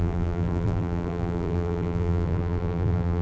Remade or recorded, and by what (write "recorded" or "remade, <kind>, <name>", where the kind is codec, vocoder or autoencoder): remade, vocoder, BigVGAN v2